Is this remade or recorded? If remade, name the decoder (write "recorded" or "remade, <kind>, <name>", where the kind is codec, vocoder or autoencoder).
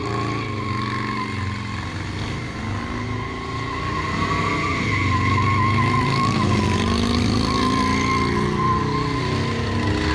recorded